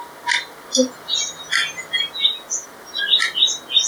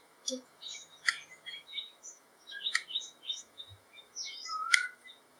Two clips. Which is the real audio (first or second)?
first